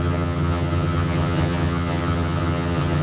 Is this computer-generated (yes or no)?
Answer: yes